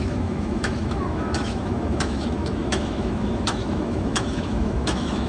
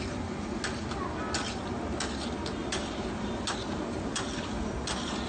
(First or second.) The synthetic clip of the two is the first